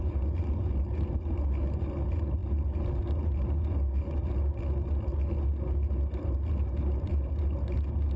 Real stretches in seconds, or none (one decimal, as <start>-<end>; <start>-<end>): 0.0-8.2